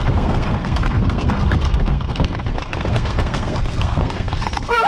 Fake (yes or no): yes